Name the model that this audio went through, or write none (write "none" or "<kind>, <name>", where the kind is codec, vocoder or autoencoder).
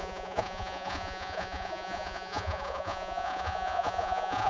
vocoder, Vocos